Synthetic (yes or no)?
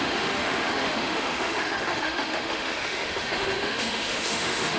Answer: yes